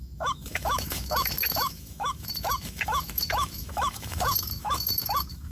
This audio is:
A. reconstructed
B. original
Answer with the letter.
A